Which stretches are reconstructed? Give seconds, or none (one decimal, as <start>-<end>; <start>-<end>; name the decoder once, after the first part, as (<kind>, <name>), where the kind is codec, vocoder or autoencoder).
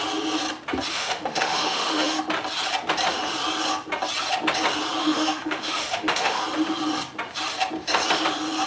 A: 0.9-2.2 (autoencoder, DAC-VAE); 5.0-6.4